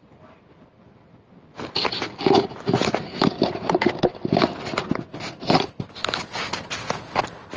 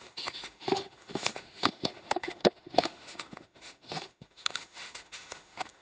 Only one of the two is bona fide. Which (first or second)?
first